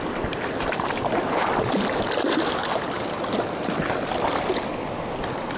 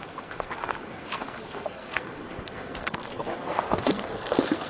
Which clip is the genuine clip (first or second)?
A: first